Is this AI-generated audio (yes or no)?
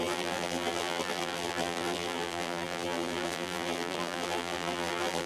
yes